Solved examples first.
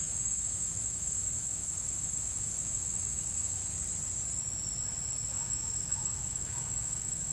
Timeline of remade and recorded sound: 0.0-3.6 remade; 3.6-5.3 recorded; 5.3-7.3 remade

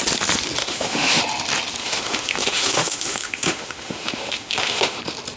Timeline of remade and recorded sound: 0.0-0.6 recorded; 0.6-1.2 remade; 1.2-1.8 recorded; 1.8-5.0 remade; 5.0-5.4 recorded

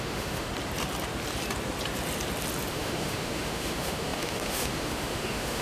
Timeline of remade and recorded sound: 0.0-0.5 remade; 0.5-2.7 recorded; 2.7-5.6 remade

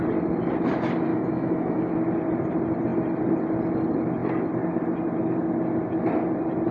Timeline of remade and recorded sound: 0.0-1.1 recorded; 1.1-1.9 remade; 1.9-6.7 recorded

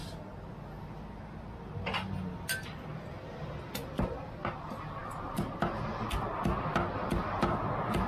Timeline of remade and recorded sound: 0.0-8.1 recorded

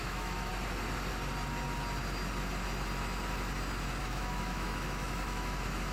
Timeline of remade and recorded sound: 0.0-0.5 remade; 0.5-4.0 recorded; 4.0-5.9 remade

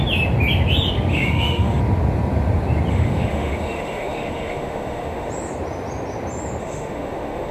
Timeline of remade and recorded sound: 0.0-1.1 recorded; 1.1-1.8 remade; 1.8-2.9 recorded; 2.9-5.3 remade; 5.3-6.6 recorded; 6.6-7.5 remade

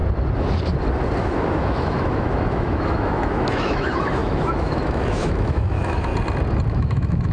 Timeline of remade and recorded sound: 0.0-1.2 recorded; 1.2-6.1 remade; 6.1-6.7 recorded; 6.7-7.3 remade